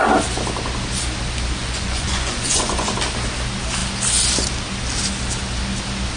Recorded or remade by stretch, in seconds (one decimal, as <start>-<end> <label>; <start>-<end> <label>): 0.0-1.6 recorded; 1.6-2.9 remade; 2.9-6.2 recorded